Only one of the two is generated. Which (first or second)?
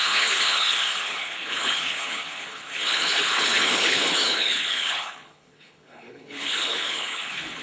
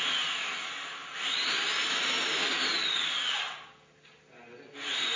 first